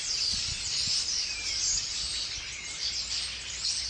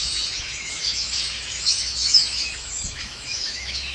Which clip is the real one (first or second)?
first